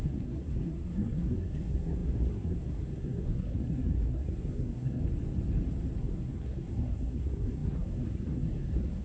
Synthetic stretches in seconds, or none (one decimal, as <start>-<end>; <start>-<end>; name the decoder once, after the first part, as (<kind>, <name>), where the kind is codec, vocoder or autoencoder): 0.0-5.0 (codec, SNAC); 6.0-9.0